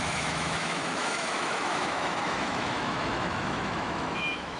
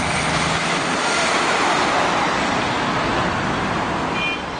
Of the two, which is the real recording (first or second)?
second